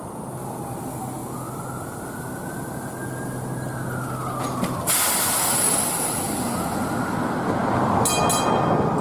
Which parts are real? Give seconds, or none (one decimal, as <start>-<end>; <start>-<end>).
0.0-9.0